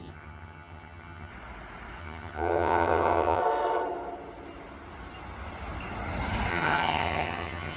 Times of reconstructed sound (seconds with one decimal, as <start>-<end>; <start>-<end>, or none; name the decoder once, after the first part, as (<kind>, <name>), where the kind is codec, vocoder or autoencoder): 0.0-1.3 (vocoder, HiFi-GAN); 2.0-3.4; 6.5-7.8